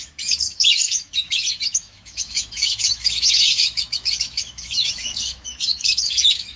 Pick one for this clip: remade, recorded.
remade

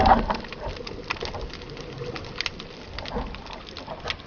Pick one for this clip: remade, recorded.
recorded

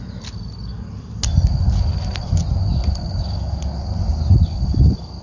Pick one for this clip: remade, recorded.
recorded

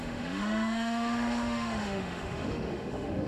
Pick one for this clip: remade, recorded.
remade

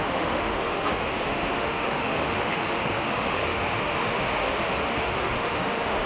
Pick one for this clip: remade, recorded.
remade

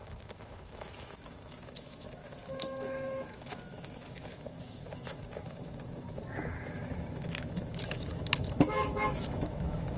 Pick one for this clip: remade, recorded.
remade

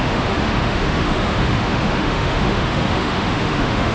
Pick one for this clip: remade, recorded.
remade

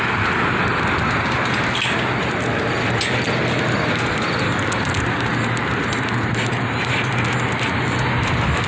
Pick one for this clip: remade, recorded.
recorded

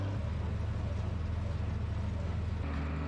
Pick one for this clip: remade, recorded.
recorded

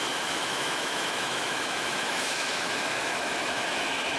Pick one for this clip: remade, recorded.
remade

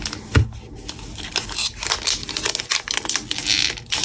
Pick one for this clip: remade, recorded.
recorded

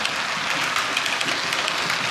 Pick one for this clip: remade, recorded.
recorded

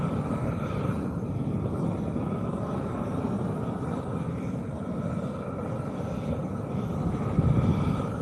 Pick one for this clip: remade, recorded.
recorded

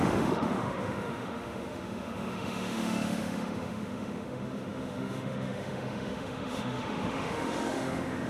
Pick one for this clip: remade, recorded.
remade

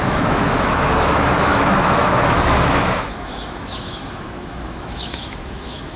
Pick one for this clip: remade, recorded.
remade